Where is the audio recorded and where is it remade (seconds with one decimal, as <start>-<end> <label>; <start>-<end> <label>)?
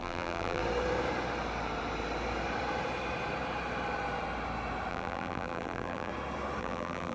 0.0-0.6 remade; 0.6-4.9 recorded; 4.9-6.1 remade; 6.1-6.6 recorded; 6.6-7.1 remade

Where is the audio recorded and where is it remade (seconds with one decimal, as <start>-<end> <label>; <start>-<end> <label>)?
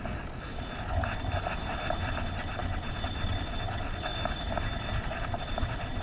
0.0-6.0 recorded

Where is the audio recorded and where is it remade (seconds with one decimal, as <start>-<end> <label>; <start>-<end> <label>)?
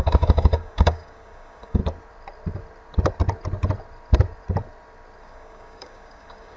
0.0-1.8 remade; 1.8-5.2 recorded; 5.2-6.6 remade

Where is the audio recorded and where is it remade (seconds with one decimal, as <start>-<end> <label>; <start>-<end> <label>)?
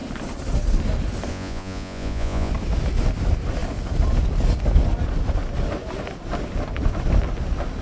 0.0-1.3 recorded; 1.3-2.5 remade; 2.5-7.8 recorded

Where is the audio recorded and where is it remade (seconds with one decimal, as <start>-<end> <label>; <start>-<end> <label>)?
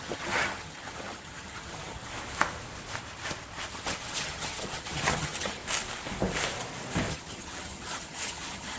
0.0-2.1 remade; 2.1-3.7 recorded; 3.7-5.6 remade; 5.6-7.1 recorded; 7.1-8.8 remade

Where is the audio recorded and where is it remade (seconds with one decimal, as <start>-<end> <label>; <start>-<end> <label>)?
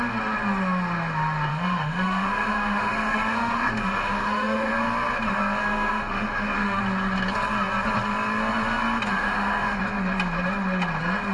0.0-1.5 recorded; 1.5-4.7 remade; 4.7-5.6 recorded; 5.6-6.8 remade; 6.8-9.1 recorded; 9.1-9.8 remade; 9.8-11.3 recorded